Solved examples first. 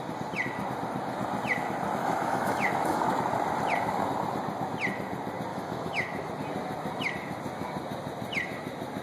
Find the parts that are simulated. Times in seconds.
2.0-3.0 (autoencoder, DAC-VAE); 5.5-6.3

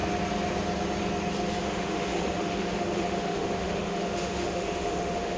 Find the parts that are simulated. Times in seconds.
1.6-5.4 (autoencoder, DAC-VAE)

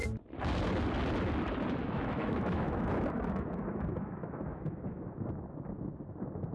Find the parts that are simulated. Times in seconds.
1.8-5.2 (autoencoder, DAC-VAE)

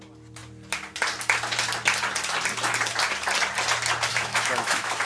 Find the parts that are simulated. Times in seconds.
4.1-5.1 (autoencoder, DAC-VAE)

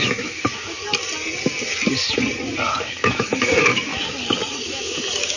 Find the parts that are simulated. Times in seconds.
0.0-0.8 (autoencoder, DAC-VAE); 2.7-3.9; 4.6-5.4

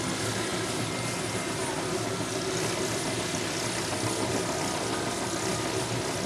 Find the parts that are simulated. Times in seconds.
none

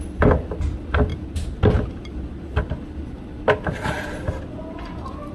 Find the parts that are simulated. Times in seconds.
none